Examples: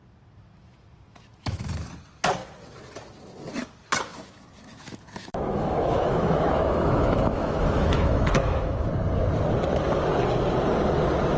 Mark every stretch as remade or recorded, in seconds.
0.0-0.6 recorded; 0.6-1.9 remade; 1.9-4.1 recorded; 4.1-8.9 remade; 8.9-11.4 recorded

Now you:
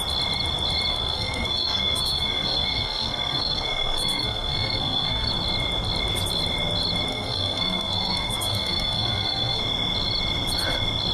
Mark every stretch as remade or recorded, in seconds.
0.0-0.9 recorded; 0.9-5.3 remade; 5.3-7.1 recorded; 7.1-9.6 remade; 9.6-11.1 recorded

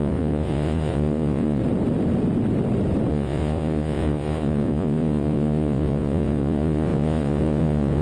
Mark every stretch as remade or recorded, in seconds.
0.0-1.6 remade; 1.6-3.1 recorded; 3.1-8.0 remade

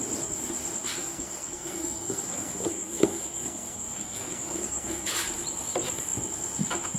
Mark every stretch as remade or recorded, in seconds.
0.0-1.0 recorded; 1.0-5.1 remade; 5.1-7.0 recorded

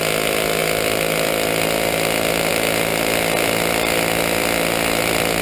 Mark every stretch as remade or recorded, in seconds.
0.0-5.4 recorded

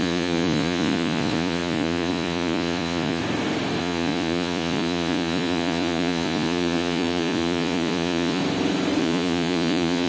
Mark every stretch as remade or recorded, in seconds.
0.0-3.2 remade; 3.2-3.8 recorded; 3.8-8.4 remade; 8.4-9.0 recorded; 9.0-10.1 remade

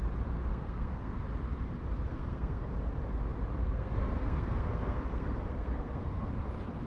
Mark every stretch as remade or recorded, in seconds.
0.0-0.5 recorded; 0.5-1.2 remade; 1.2-2.1 recorded; 2.1-2.7 remade; 2.7-3.6 recorded; 3.6-6.3 remade; 6.3-6.9 recorded

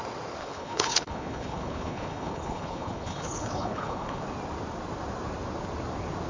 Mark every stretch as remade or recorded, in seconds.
0.0-0.4 recorded; 0.4-4.2 remade; 4.2-6.3 recorded